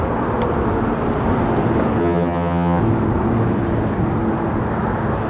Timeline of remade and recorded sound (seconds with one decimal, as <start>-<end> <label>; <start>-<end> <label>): 0.0-2.0 recorded; 2.0-2.8 remade; 2.8-5.3 recorded